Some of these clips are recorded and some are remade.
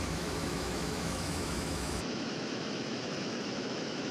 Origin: remade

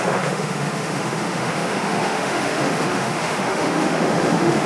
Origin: remade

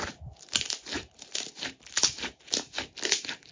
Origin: recorded